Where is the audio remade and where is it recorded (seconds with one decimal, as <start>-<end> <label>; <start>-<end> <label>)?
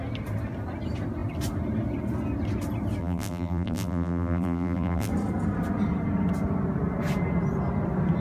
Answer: 0.0-3.0 recorded; 3.0-5.1 remade; 5.1-8.2 recorded